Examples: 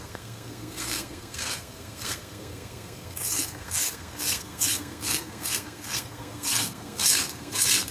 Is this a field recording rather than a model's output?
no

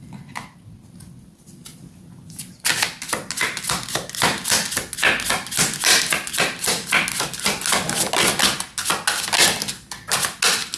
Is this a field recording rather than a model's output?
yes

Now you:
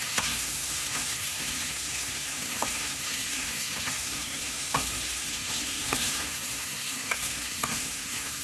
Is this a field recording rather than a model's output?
no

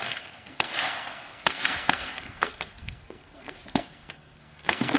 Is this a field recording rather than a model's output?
no